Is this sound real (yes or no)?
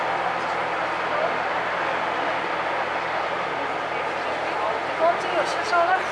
yes